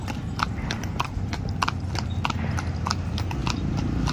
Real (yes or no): yes